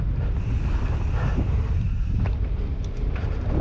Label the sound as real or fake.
real